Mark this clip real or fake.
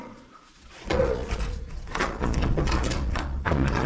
fake